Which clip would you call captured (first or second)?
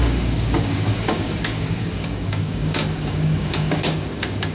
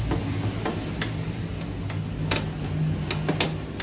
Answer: second